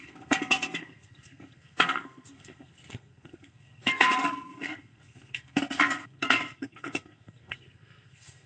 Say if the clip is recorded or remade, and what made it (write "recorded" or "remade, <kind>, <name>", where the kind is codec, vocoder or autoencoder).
remade, codec, SNAC